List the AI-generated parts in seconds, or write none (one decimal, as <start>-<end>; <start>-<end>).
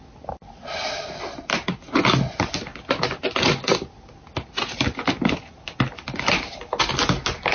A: none